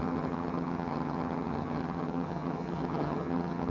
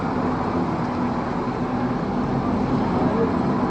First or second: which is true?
second